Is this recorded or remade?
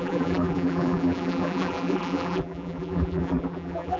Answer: remade